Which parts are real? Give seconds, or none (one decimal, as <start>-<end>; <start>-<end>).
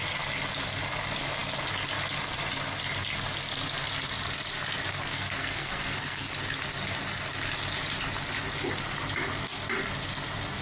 0.0-4.9; 6.3-10.6